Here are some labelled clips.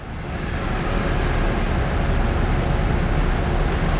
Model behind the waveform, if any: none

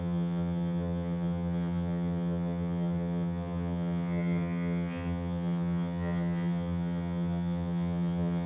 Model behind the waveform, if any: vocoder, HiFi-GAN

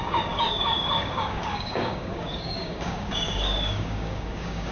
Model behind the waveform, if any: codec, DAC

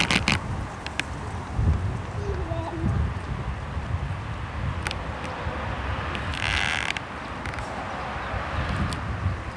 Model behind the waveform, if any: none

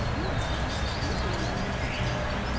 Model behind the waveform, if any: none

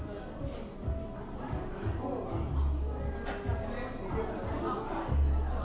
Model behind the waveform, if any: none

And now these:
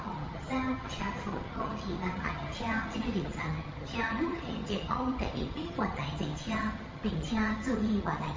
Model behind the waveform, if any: vocoder, HiFi-GAN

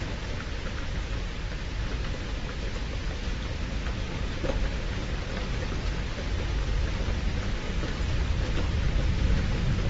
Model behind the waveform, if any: none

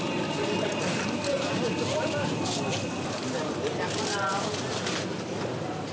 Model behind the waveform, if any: none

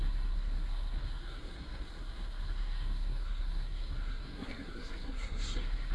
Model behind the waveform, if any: codec, SNAC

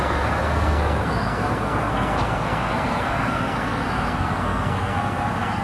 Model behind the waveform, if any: codec, SNAC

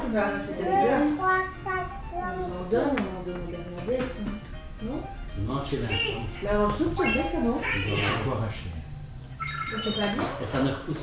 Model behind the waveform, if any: none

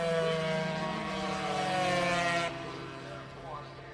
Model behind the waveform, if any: none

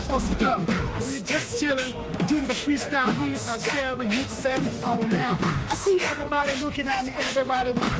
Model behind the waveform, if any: autoencoder, DAC-VAE